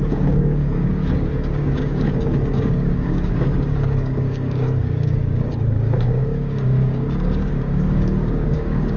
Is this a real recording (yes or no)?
no